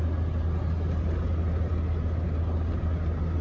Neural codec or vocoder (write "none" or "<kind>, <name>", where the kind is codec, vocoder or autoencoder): none